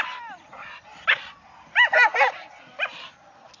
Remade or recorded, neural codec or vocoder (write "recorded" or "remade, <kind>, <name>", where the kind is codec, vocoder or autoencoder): recorded